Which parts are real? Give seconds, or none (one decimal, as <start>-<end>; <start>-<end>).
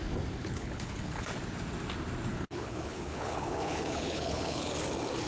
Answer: 0.0-0.4; 1.3-2.3; 4.7-5.3